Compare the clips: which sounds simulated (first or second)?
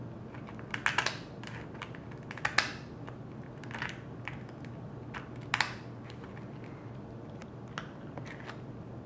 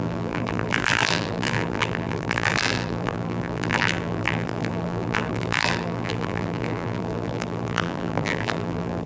second